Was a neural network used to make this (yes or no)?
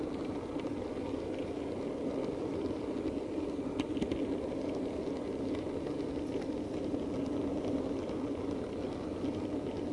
no